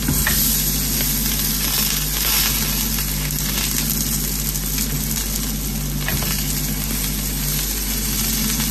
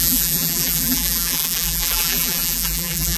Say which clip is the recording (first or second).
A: first